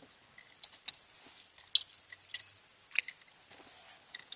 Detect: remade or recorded recorded